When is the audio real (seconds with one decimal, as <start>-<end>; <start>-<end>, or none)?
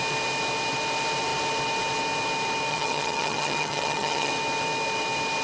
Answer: 0.0-2.7; 4.3-5.4